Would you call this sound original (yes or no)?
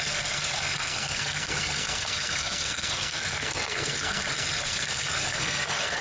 no